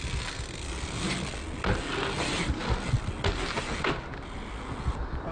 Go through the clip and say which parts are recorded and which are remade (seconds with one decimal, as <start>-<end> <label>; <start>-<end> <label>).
0.0-5.3 recorded